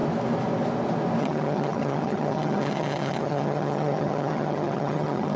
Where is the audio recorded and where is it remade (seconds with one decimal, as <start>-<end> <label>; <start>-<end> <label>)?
0.0-1.2 recorded; 1.2-5.4 remade

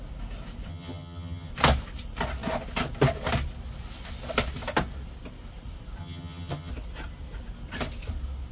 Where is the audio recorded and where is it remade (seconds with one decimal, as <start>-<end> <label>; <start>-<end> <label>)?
0.0-0.7 recorded; 0.7-1.5 remade; 1.5-6.0 recorded; 6.0-6.7 remade; 6.7-8.5 recorded

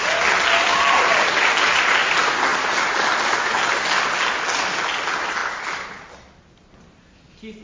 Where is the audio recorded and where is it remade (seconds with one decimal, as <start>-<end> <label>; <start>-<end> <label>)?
0.0-7.6 recorded

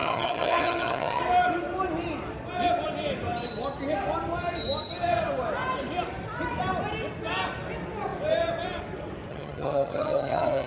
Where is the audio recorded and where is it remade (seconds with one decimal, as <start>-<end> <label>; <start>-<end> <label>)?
0.0-1.2 remade; 1.2-9.3 recorded; 9.3-10.7 remade

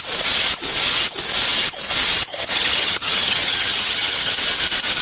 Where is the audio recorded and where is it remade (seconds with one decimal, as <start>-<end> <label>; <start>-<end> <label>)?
0.0-2.3 recorded; 2.3-4.3 remade; 4.3-5.0 recorded

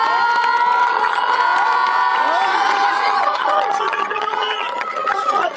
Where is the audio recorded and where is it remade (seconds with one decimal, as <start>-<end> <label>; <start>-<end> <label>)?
0.0-0.8 recorded; 0.8-1.4 remade; 1.4-2.5 recorded; 2.5-5.6 remade

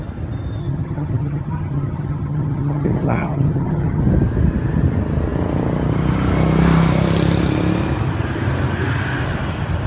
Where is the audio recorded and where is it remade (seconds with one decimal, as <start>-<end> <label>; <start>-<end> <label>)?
0.0-0.6 recorded; 0.6-4.0 remade; 4.0-9.9 recorded

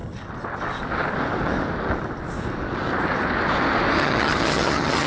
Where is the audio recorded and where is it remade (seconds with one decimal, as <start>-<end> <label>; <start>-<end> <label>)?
0.0-4.0 recorded; 4.0-5.1 remade